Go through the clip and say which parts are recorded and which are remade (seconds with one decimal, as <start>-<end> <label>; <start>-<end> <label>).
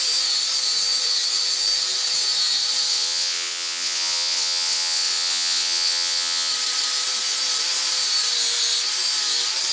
0.0-2.9 recorded; 2.9-6.5 remade; 6.5-9.7 recorded